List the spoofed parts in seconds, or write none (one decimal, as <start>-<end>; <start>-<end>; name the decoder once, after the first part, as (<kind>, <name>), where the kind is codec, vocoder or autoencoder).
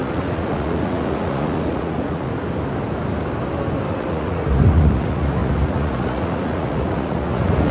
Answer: 0.0-2.3 (vocoder, Vocos); 3.9-7.7